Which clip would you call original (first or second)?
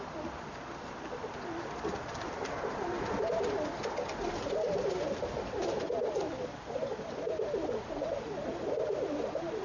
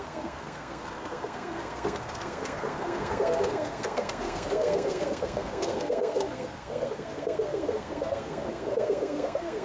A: first